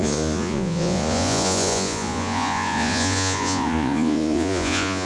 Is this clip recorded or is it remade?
remade